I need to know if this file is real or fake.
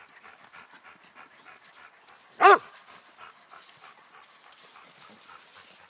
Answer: real